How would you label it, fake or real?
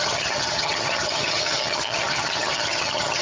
fake